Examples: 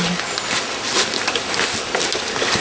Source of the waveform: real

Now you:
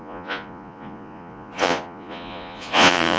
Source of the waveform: fake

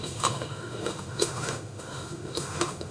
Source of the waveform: fake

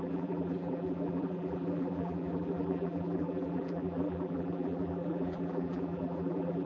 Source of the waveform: fake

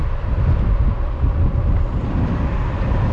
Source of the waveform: real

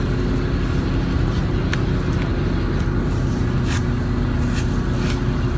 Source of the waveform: real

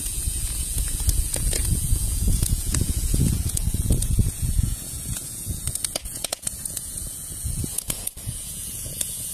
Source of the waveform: fake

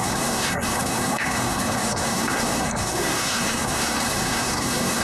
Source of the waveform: fake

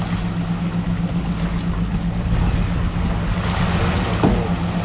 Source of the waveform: real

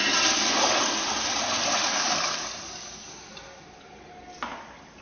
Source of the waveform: real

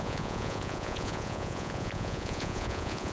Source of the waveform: fake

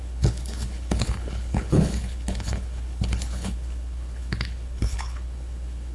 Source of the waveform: fake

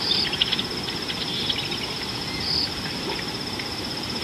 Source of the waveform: real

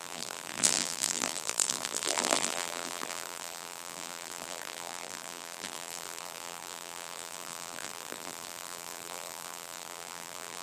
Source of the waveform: fake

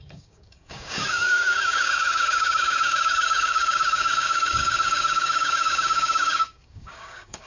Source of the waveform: fake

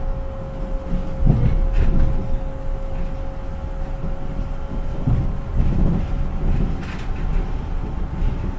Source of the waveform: real